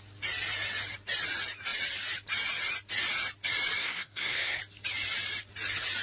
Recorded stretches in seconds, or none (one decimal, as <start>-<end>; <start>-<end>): 0.0-3.8; 4.6-6.0